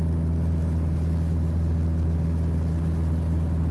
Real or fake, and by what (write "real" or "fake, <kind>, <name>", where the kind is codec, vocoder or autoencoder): real